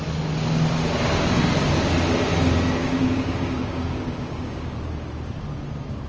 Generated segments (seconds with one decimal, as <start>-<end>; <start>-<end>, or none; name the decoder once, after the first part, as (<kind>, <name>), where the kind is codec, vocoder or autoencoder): 2.8-4.8 (codec, DAC)